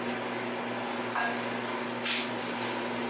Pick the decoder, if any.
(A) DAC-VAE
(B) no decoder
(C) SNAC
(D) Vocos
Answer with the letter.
B